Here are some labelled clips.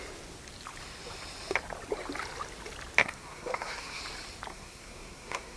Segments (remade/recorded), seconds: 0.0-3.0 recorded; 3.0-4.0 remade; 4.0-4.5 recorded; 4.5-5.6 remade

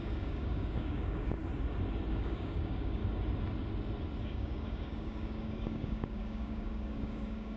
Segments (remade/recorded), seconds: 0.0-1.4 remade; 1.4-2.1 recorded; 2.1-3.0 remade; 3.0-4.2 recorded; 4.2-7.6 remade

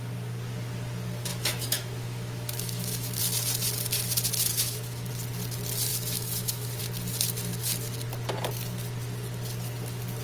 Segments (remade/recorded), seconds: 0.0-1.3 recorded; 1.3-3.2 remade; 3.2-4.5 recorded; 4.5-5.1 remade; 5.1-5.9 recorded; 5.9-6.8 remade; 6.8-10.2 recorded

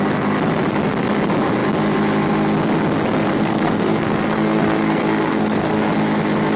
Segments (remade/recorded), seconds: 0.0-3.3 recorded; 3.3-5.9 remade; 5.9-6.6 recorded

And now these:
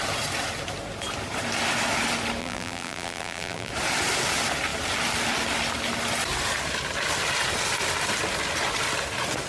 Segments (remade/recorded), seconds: 0.0-2.4 recorded; 2.4-3.7 remade; 3.7-9.5 recorded

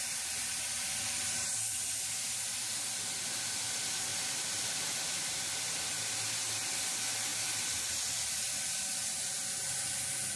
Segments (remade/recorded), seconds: 0.0-4.1 recorded; 4.1-5.6 remade; 5.6-10.4 recorded

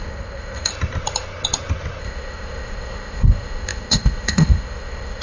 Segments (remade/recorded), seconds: 0.0-0.7 remade; 0.7-2.0 recorded; 2.0-5.2 remade